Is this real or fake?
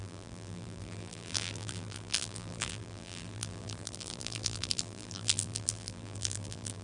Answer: fake